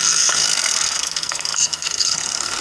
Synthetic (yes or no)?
yes